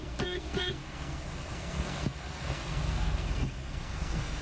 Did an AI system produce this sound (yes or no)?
yes